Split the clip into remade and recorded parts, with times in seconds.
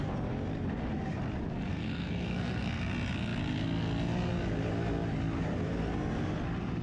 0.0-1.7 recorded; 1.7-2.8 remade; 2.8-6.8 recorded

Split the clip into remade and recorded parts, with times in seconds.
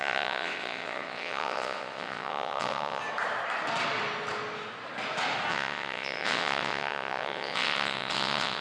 0.0-3.0 remade; 3.0-5.5 recorded; 5.5-8.6 remade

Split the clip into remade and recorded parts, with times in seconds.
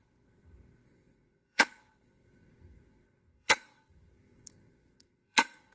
0.0-5.7 remade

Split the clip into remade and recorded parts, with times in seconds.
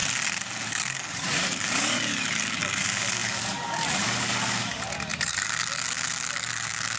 0.0-0.7 recorded; 0.7-7.0 remade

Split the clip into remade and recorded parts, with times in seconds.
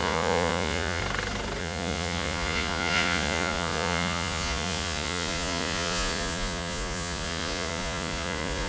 0.0-1.0 remade; 1.0-1.6 recorded; 1.6-8.7 remade